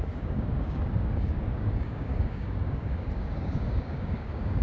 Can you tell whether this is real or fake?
fake